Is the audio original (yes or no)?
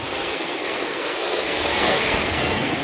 no